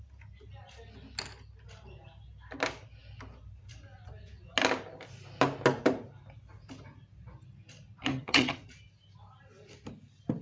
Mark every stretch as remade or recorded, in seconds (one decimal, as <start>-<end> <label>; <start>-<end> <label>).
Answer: 0.0-8.1 recorded; 8.1-8.6 remade; 8.6-10.4 recorded